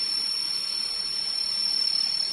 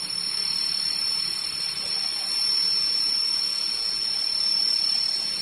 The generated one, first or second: first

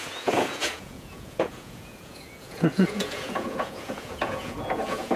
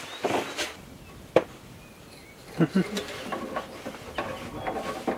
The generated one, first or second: first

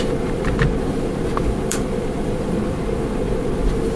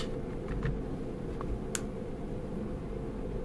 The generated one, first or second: first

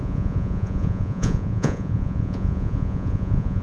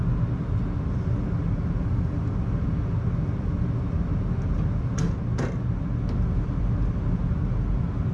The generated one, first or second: first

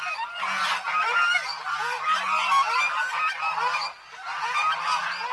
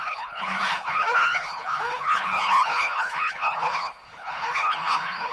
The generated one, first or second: second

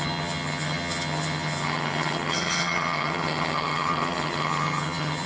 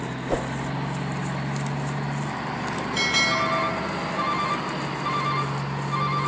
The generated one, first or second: first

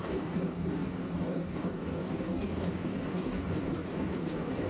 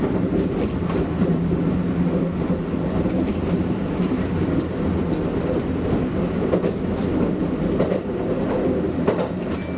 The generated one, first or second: first